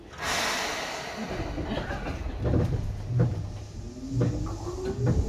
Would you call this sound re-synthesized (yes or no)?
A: no